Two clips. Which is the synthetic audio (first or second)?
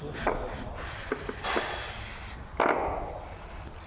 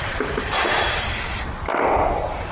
second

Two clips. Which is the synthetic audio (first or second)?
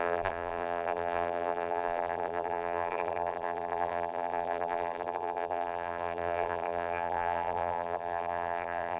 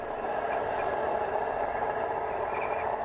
first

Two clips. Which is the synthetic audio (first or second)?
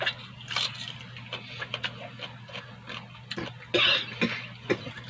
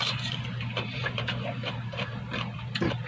second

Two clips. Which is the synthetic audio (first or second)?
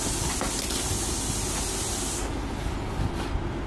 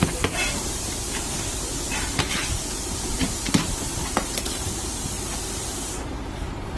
second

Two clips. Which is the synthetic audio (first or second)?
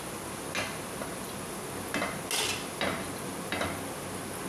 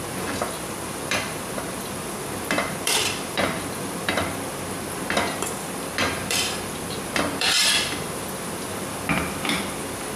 second